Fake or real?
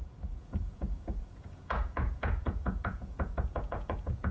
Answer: fake